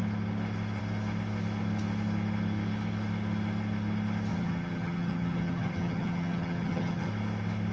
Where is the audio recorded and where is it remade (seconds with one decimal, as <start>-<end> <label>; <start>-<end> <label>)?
0.0-4.3 recorded; 4.3-7.1 remade; 7.1-7.7 recorded